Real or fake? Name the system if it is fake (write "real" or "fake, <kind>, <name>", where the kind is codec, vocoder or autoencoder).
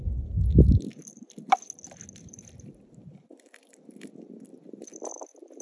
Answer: real